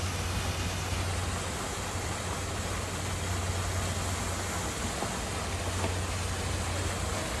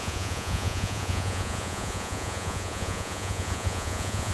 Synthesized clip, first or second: second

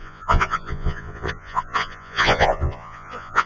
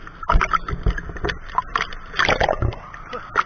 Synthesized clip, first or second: first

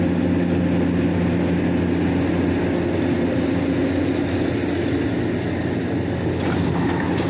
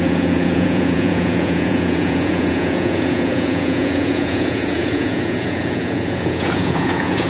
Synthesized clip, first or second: second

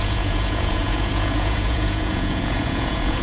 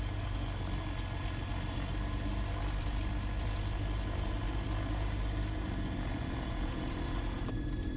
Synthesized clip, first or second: first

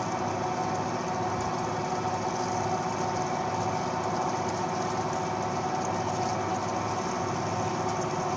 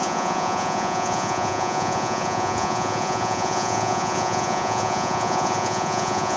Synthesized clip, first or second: second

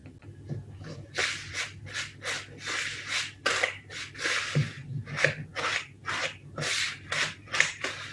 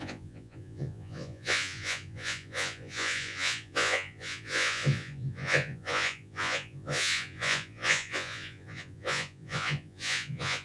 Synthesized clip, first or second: second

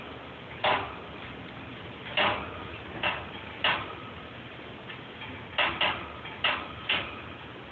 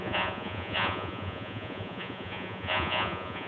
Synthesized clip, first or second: second